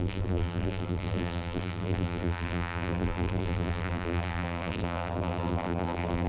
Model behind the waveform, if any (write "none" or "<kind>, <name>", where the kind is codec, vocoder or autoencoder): vocoder, BigVGAN v2